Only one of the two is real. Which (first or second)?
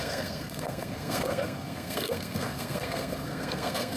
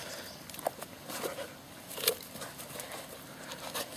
second